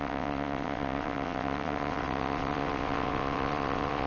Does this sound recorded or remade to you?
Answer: remade